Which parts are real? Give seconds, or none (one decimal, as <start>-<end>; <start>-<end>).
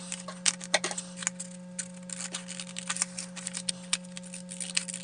0.0-5.0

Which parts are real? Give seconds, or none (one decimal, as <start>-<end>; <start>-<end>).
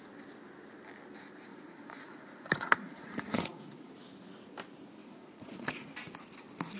0.0-1.5; 3.9-5.0; 5.9-6.8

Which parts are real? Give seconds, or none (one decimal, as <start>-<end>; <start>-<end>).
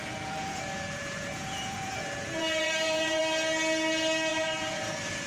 3.2-4.3